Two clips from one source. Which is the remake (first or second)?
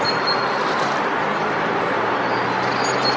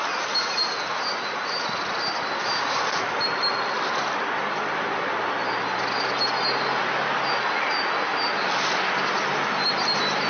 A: first